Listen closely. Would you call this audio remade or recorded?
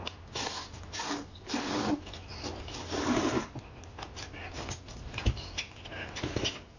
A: recorded